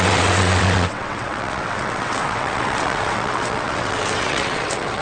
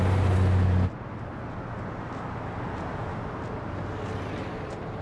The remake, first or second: first